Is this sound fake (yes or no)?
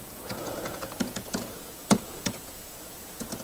yes